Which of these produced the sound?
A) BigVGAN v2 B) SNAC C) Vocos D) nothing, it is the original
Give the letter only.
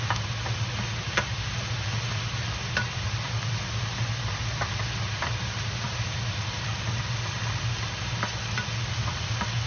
D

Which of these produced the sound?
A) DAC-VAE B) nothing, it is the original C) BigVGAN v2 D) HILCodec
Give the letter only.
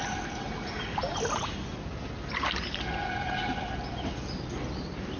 B